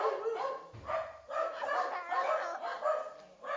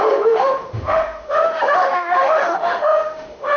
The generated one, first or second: second